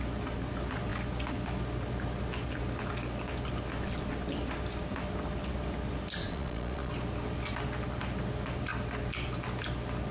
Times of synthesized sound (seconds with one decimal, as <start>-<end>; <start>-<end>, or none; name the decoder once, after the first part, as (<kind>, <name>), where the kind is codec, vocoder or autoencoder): 6.2-6.9 (vocoder, Vocos)